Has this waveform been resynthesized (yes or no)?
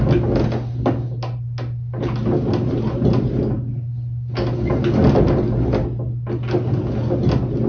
no